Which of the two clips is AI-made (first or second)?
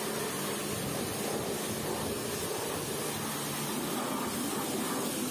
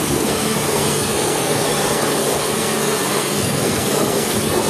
second